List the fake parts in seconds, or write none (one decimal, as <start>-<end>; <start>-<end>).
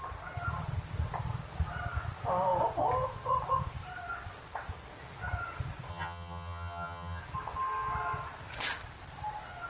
5.9-7.2